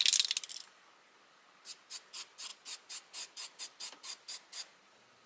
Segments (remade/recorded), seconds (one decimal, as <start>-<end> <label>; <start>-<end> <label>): 0.0-5.3 recorded